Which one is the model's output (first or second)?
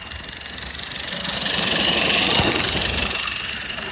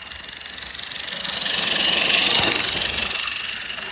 first